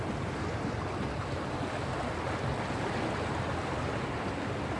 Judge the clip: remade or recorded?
recorded